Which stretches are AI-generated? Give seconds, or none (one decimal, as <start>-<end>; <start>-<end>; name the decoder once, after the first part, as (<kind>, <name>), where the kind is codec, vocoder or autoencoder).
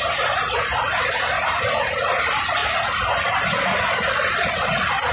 none